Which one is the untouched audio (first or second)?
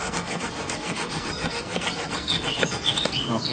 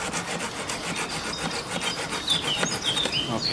second